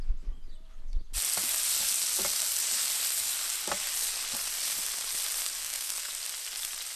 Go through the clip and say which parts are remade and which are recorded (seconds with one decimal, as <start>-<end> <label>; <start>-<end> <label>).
0.0-5.6 recorded; 5.6-6.1 remade; 6.1-7.0 recorded